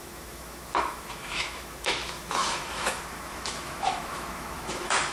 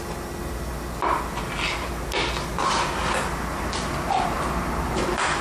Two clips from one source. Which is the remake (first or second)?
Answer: first